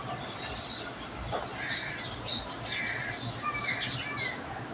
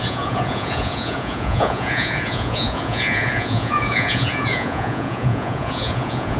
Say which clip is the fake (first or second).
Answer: second